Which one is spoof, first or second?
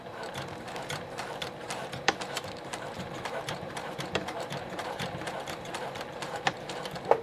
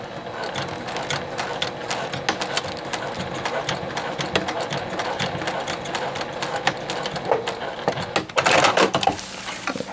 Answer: first